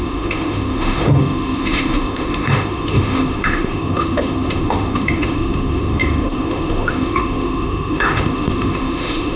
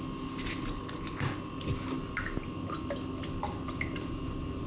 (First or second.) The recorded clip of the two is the second